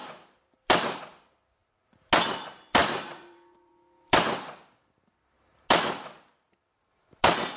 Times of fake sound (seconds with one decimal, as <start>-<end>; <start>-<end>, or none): 0.0-1.0; 2.8-3.7